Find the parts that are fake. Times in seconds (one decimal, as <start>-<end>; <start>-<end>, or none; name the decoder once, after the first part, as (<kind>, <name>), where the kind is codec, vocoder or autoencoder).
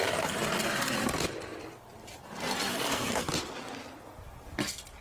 2.7-3.3 (codec, SNAC)